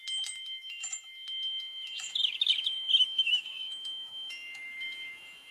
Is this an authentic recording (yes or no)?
no